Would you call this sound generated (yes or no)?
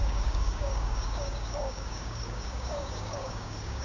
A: yes